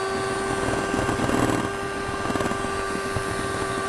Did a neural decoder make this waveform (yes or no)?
no